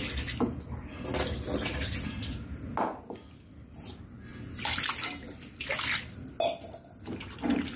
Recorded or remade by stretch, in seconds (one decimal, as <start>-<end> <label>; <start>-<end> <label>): 0.0-7.8 recorded

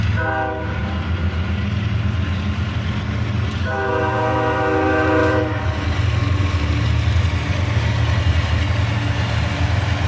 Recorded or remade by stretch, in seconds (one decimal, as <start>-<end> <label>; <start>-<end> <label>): 0.0-10.1 recorded

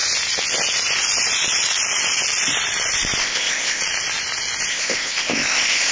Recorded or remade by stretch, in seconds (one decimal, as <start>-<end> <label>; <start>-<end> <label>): 0.0-3.2 recorded; 3.2-3.8 remade; 3.8-4.7 recorded; 4.7-5.9 remade

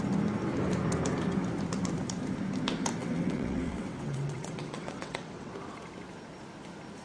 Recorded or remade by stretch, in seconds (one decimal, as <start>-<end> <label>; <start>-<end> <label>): 0.0-3.0 recorded; 3.0-5.5 remade; 5.5-7.0 recorded